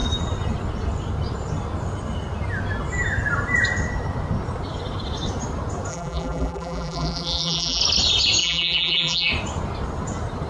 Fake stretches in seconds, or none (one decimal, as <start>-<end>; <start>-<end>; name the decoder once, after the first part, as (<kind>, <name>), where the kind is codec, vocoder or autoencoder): 5.9-7.8 (vocoder, BigVGAN v2); 8.4-9.3